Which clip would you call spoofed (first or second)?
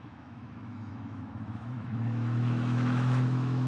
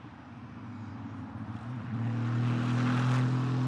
first